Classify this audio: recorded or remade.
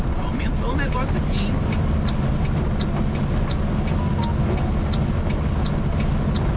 recorded